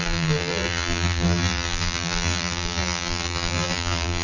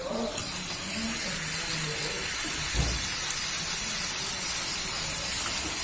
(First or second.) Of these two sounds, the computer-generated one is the first